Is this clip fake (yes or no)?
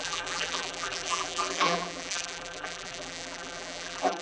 yes